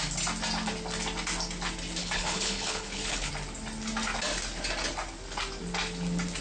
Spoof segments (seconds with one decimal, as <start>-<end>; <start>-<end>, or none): 2.0-3.3